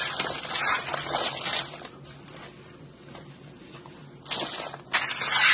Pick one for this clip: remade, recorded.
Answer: recorded